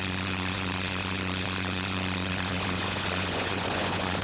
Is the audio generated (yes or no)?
yes